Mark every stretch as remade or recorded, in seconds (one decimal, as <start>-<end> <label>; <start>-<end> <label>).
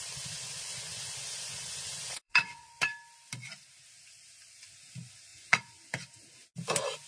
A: 0.0-0.7 recorded; 0.7-2.7 remade; 2.7-5.3 recorded; 5.3-5.9 remade; 5.9-7.1 recorded